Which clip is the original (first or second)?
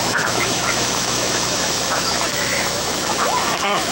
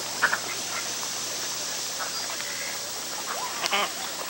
second